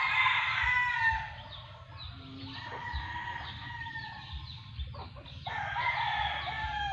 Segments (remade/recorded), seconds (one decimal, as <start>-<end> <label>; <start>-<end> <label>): 0.0-6.9 recorded